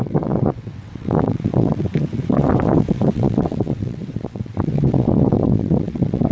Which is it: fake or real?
fake